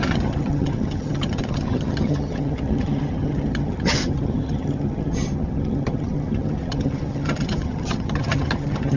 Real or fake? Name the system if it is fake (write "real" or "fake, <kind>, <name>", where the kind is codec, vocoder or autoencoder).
fake, vocoder, HiFi-GAN